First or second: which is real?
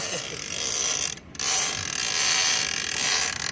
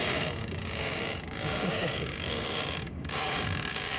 first